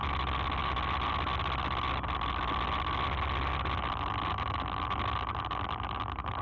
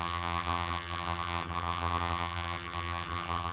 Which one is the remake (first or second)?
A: second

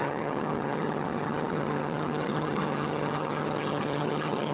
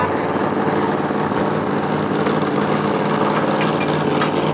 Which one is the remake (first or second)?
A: first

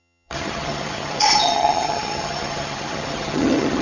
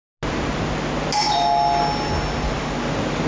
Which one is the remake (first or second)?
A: first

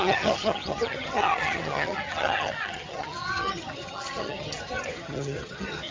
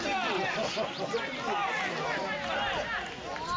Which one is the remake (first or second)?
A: first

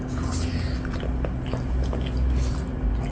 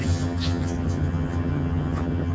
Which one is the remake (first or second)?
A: second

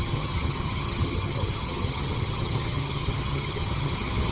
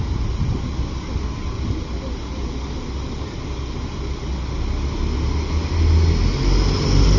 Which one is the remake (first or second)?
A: first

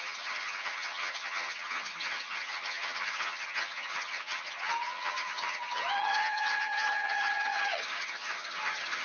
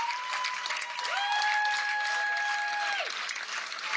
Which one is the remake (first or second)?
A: first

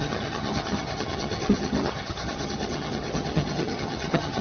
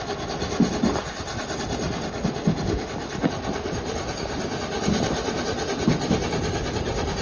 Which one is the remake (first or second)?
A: first